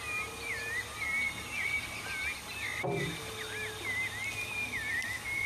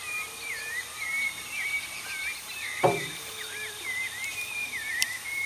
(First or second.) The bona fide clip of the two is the first